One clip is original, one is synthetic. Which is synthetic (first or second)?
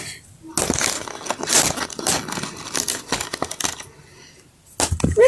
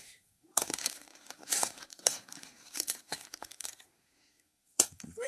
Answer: second